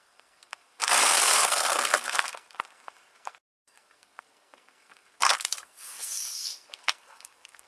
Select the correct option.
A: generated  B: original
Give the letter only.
A